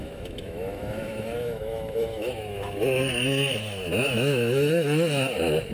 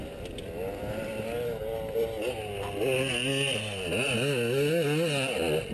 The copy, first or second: first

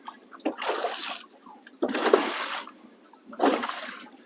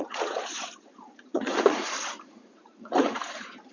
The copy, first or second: second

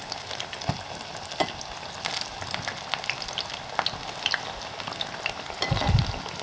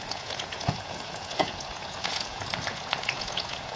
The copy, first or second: second